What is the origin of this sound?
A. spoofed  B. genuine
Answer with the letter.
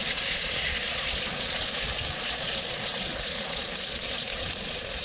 A